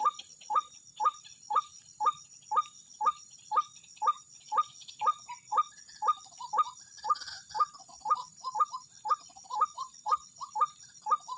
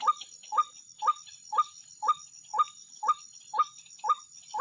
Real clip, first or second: second